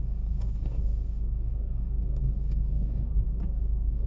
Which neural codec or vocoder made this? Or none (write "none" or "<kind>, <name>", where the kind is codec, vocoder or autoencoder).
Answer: codec, DAC